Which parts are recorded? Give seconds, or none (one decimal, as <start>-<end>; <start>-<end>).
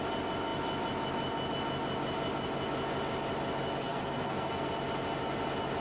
0.0-3.8; 4.7-5.8